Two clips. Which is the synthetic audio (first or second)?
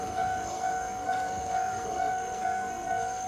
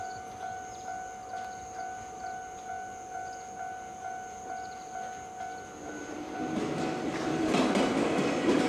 first